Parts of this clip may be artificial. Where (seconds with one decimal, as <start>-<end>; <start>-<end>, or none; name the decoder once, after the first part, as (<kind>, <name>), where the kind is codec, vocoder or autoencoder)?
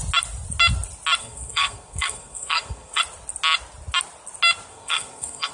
1.2-3.0 (codec, SNAC); 4.7-5.5